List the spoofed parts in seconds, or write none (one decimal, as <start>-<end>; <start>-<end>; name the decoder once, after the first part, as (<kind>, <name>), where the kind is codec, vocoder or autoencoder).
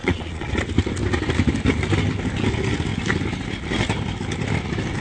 0.0-0.5 (vocoder, Vocos)